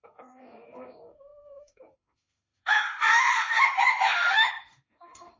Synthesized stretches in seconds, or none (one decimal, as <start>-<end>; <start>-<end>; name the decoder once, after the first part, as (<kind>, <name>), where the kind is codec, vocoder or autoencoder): 0.0-5.4 (autoencoder, DAC-VAE)